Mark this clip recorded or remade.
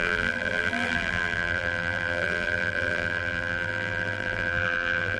remade